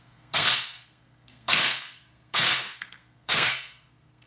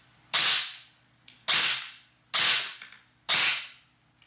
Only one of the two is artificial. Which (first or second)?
first